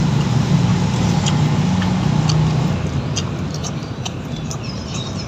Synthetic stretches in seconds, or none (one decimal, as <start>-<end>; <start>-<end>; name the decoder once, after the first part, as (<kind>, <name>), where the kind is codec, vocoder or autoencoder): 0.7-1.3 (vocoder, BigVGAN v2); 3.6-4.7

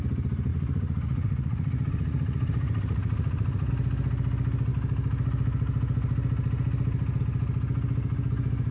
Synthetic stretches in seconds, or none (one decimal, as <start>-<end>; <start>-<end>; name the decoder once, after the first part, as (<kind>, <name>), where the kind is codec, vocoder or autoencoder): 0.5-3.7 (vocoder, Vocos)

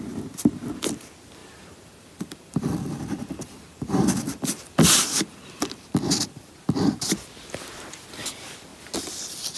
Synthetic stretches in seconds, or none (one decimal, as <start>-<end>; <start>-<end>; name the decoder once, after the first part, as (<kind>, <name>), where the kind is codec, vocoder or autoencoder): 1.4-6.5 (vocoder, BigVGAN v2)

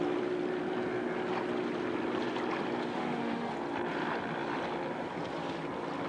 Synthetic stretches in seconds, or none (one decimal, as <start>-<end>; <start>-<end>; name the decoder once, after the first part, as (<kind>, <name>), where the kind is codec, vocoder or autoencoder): 2.9-3.5 (autoencoder, DAC-VAE)

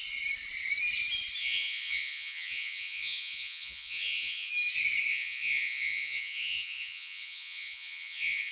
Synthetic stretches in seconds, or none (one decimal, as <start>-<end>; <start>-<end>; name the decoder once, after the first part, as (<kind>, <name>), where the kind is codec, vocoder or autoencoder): 1.4-4.5 (vocoder, Vocos); 5.1-8.5

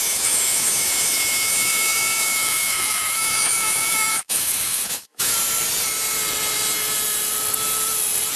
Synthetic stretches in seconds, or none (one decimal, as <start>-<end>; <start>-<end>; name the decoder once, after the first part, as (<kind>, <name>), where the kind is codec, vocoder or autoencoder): 0.0-5.3 (autoencoder, DAC-VAE)

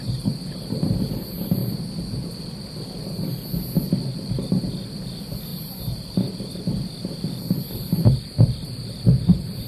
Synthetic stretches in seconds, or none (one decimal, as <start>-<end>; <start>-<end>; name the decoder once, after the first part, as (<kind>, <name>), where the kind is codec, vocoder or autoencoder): 5.5-6.3 (vocoder, BigVGAN v2)